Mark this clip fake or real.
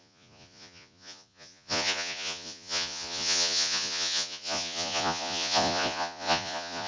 fake